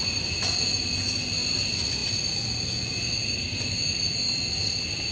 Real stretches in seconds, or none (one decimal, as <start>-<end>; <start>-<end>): 0.0-5.1